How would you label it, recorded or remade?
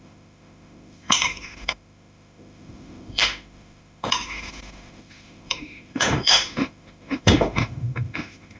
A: remade